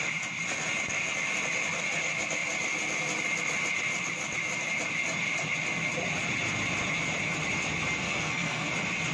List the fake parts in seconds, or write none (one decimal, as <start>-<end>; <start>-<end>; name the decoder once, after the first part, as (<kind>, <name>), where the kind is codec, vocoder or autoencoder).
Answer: 8.0-8.7 (codec, SNAC)